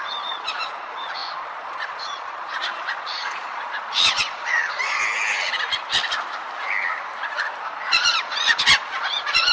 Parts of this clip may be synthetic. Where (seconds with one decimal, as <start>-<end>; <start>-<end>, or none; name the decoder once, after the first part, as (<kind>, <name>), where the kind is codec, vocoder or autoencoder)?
0.0-5.0 (vocoder, Vocos); 7.6-9.5